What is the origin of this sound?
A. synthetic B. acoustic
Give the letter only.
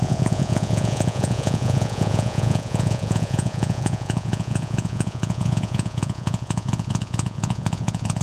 A